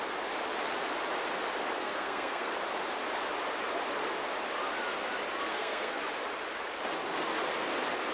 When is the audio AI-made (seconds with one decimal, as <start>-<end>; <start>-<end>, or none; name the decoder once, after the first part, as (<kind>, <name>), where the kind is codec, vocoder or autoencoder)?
1.8-2.5 (codec, SNAC); 5.5-6.0